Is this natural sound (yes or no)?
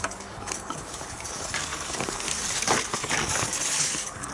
no